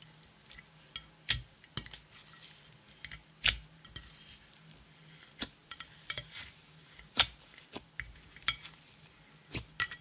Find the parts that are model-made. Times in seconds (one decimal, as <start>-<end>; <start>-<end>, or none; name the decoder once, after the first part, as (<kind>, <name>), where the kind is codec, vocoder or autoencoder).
5.6-7.8 (vocoder, BigVGAN v2)